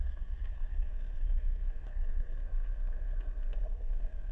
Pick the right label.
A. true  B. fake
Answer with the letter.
B